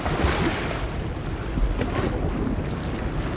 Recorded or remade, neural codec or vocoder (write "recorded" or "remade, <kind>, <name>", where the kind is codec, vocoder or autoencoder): recorded